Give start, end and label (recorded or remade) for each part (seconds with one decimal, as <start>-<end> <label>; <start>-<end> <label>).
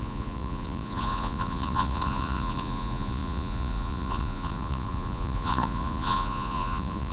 0.0-7.1 remade